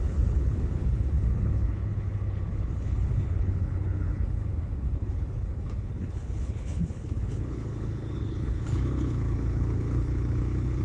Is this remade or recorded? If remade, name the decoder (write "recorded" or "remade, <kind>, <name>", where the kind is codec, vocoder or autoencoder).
remade, codec, HILCodec